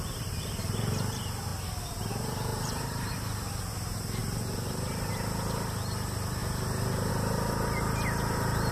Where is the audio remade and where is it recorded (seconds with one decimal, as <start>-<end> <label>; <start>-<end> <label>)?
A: 0.0-2.5 recorded; 2.5-3.1 remade; 3.1-8.7 recorded